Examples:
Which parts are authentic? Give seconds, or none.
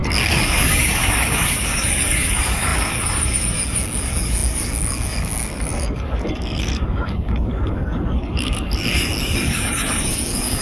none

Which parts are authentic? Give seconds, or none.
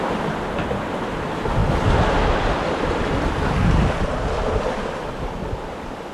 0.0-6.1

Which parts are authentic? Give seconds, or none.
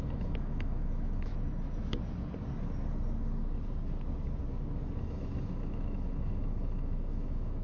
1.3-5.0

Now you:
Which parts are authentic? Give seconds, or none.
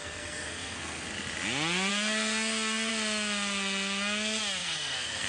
1.0-1.9; 2.9-4.6